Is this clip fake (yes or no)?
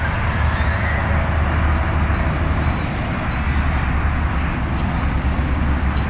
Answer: no